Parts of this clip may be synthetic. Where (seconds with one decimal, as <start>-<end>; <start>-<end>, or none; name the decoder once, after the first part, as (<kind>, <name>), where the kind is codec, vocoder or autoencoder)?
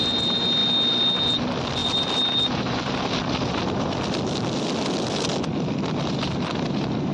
none